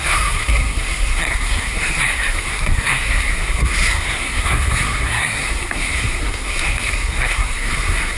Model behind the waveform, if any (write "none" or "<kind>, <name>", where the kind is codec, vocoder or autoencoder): codec, SNAC